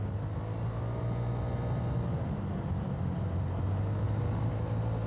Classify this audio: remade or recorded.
recorded